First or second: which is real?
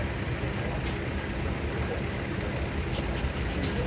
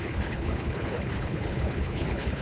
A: first